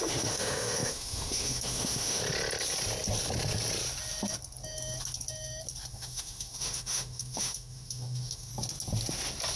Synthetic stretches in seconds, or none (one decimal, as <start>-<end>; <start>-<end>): 0.0-2.2; 5.9-8.5